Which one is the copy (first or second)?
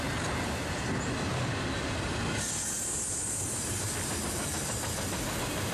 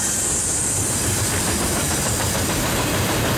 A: second